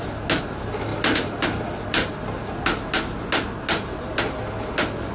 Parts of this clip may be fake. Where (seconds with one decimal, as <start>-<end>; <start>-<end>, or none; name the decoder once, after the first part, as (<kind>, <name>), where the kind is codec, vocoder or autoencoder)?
0.9-2.1 (vocoder, BigVGAN v2)